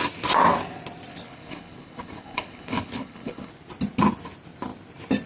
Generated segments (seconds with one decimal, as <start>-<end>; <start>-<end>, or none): 1.1-3.5